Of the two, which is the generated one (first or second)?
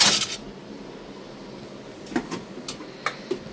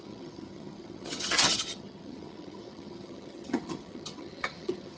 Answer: second